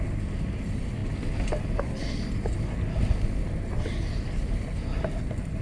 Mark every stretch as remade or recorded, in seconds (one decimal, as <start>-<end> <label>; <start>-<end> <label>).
0.0-5.6 recorded

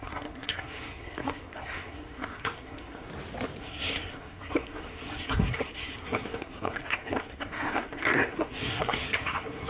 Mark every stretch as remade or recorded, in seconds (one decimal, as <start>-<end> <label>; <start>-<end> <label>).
0.0-3.1 remade; 3.1-3.6 recorded; 3.6-9.7 remade

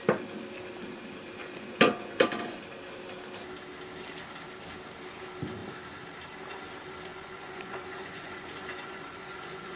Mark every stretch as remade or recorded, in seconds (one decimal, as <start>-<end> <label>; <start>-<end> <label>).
0.0-1.4 recorded; 1.4-2.6 remade; 2.6-7.1 recorded; 7.1-9.8 remade

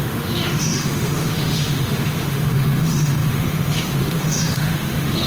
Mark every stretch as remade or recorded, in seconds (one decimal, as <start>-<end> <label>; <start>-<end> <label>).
0.0-5.3 remade

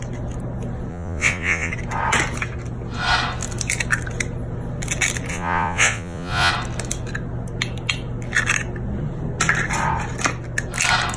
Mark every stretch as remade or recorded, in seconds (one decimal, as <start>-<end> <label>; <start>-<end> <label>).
0.0-0.9 recorded; 0.9-1.7 remade; 1.7-5.3 recorded; 5.3-6.5 remade; 6.5-11.2 recorded

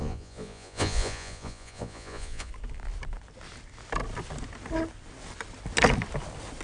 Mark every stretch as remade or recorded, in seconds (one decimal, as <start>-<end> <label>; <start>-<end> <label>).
0.0-2.5 remade; 2.5-6.6 recorded

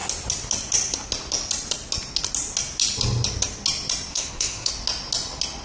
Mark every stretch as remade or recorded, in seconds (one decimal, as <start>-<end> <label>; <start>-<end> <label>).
0.0-4.1 recorded; 4.1-4.7 remade; 4.7-5.6 recorded